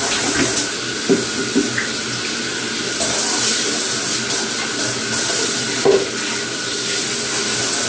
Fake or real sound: real